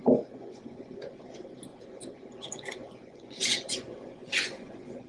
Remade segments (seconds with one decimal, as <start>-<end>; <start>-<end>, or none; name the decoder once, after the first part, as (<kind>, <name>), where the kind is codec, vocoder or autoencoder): 0.0-1.2 (vocoder, Vocos); 1.7-5.1